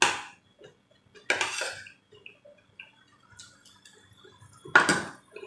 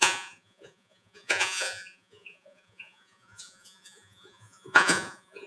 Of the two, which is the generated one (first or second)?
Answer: second